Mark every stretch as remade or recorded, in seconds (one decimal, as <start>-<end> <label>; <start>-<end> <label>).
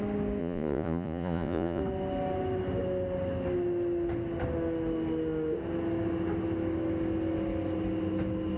0.0-0.4 recorded; 0.4-1.8 remade; 1.8-8.6 recorded